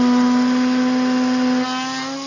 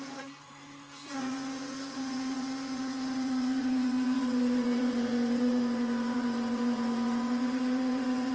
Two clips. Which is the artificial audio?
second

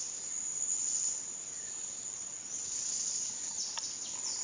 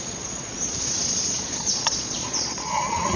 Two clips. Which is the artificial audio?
second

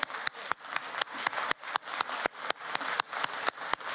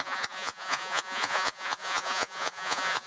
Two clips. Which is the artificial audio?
second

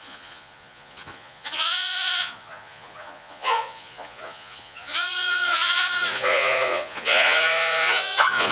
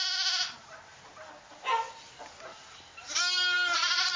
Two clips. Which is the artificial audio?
first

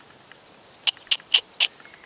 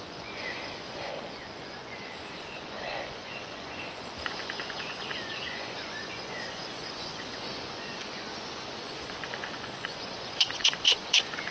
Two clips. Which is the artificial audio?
second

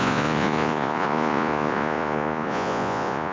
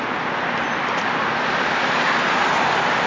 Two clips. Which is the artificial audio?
first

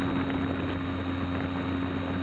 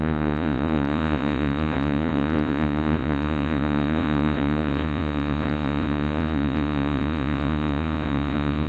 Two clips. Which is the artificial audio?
second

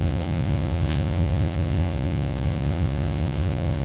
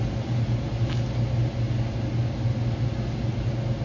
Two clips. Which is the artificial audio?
first